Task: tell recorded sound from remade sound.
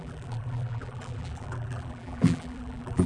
remade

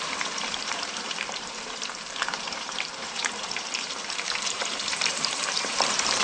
remade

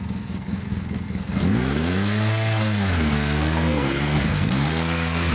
remade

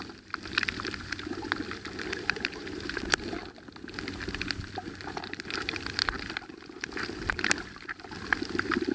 remade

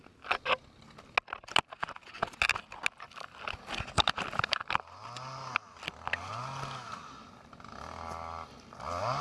recorded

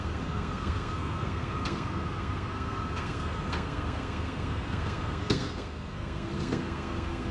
remade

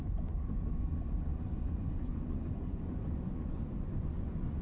remade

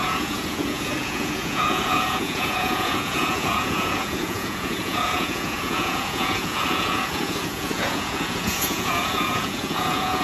remade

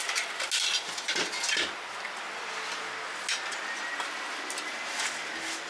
recorded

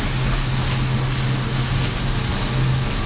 recorded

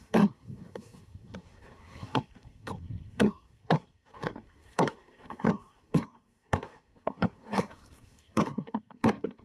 remade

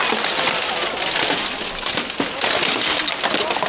recorded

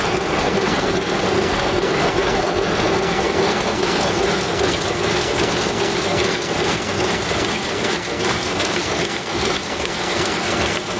remade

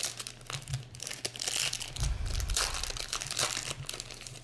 recorded